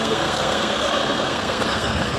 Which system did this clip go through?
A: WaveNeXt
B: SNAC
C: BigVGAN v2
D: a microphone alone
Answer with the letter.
B